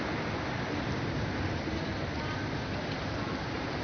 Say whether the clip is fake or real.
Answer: real